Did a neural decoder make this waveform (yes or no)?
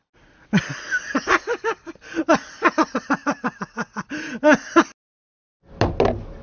no